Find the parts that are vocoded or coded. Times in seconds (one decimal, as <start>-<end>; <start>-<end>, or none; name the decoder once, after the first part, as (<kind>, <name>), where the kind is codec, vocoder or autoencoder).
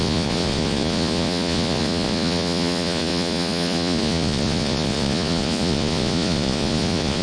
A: 0.0-7.2 (vocoder, Vocos)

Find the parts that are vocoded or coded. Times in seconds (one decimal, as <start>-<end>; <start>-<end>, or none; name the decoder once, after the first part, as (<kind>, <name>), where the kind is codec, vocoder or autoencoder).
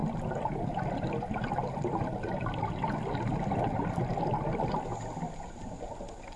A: none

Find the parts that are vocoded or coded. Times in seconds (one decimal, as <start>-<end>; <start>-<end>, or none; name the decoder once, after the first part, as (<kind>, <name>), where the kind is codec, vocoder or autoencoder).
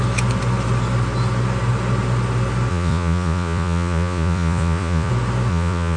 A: 2.7-5.1 (vocoder, Vocos); 5.5-6.0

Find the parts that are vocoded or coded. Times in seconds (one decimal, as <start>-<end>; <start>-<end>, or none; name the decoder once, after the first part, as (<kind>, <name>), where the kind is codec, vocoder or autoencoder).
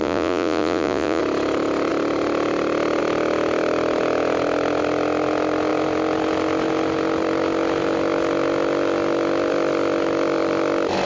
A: 0.0-1.2 (vocoder, Vocos)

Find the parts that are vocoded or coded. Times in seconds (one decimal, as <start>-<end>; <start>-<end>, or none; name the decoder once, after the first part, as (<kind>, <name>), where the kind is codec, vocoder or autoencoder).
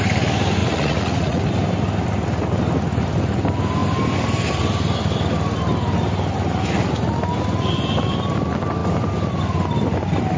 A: 0.6-1.4 (vocoder, Vocos)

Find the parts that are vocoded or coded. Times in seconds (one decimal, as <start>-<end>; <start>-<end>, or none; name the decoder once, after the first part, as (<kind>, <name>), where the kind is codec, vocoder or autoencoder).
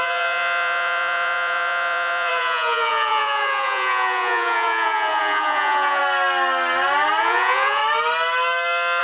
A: 0.0-6.0 (vocoder, Vocos); 7.2-7.8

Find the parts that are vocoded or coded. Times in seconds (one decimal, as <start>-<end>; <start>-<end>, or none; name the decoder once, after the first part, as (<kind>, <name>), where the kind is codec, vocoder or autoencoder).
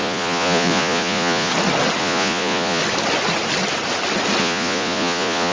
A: 0.0-1.5 (vocoder, Vocos); 2.0-2.8; 4.4-5.5